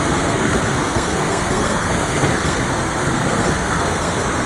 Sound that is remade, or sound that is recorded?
remade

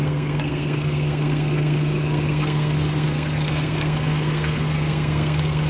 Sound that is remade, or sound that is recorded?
remade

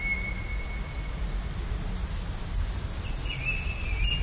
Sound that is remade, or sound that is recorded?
recorded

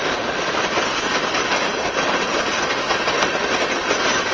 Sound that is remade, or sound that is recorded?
recorded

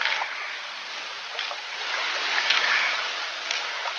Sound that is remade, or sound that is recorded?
recorded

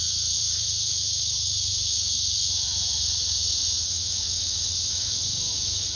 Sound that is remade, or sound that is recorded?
remade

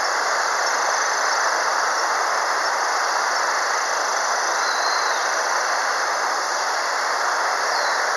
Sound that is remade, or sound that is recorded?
remade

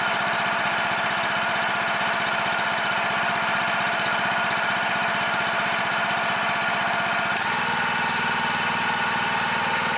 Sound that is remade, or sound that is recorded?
recorded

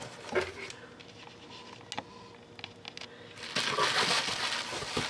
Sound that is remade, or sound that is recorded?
recorded